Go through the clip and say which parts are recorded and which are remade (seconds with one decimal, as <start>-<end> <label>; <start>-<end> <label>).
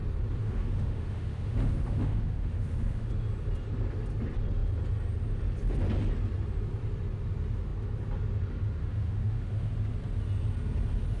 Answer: 0.0-0.4 recorded; 0.4-3.1 remade; 3.1-8.8 recorded; 8.8-9.7 remade; 9.7-11.2 recorded